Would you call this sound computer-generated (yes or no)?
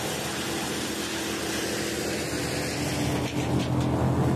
no